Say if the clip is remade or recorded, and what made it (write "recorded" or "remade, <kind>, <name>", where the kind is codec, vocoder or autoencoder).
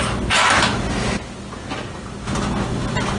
recorded